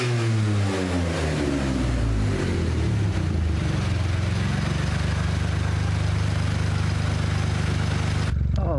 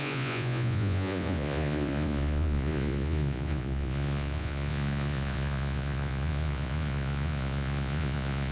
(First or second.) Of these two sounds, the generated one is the second